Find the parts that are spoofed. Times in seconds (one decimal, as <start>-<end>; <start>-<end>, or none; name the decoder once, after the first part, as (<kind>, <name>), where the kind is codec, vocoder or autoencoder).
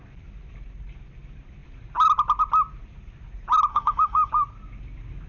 3.7-4.3 (autoencoder, DAC-VAE)